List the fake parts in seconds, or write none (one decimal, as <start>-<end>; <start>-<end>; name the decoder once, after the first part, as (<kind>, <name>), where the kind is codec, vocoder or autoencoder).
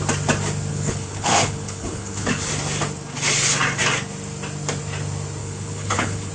0.7-2.5 (codec, HILCodec); 5.4-6.3